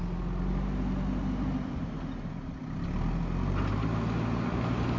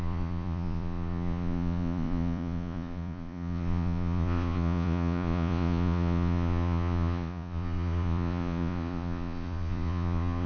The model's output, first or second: second